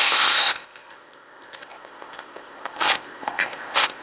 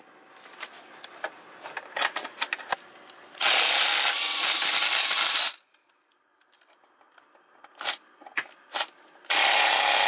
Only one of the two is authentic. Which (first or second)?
second